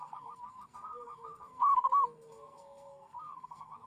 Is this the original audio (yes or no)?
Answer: no